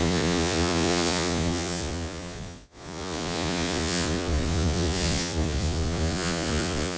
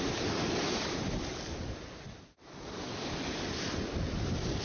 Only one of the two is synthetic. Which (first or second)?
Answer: first